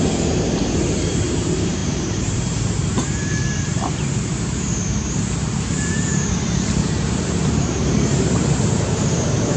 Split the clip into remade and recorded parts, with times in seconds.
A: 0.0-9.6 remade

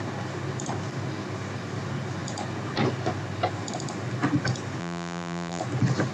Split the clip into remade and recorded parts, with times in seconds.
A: 0.0-4.8 recorded; 4.8-5.6 remade; 5.6-6.1 recorded

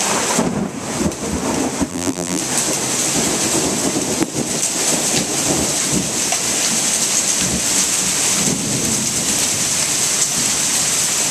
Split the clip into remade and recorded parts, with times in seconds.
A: 0.0-1.9 recorded; 1.9-2.4 remade; 2.4-11.3 recorded

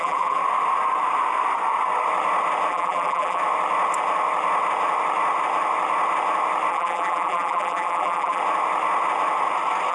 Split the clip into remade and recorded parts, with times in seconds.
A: 0.0-0.4 remade; 0.4-2.7 recorded; 2.7-3.4 remade; 3.4-6.7 recorded; 6.7-8.4 remade; 8.4-9.9 recorded

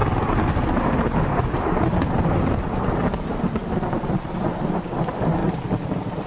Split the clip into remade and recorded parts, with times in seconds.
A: 0.0-5.4 recorded; 5.4-6.3 remade

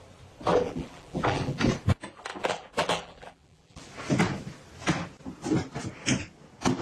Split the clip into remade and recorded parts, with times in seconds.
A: 0.0-0.5 recorded; 0.5-1.6 remade; 1.6-2.3 recorded; 2.3-3.8 remade; 3.8-6.8 recorded

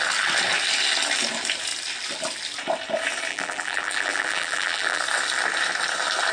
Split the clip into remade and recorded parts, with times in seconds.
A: 0.0-3.3 recorded; 3.3-5.0 remade; 5.0-6.3 recorded